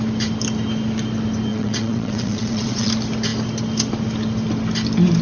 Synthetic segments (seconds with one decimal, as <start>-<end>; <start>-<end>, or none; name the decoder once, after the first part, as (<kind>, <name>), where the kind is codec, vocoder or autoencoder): 1.5-2.9 (vocoder, WaveNeXt)